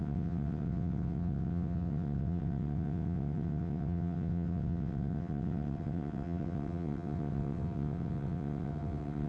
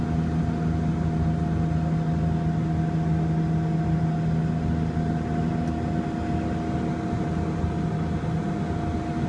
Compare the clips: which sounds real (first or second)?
second